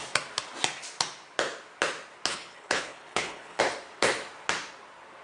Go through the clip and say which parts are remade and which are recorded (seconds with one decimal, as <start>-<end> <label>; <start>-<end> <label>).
0.0-2.3 recorded; 2.3-3.6 remade; 3.6-5.2 recorded